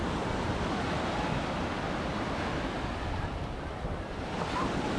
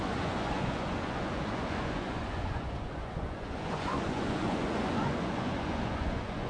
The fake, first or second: second